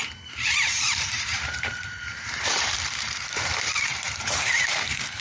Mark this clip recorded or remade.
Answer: remade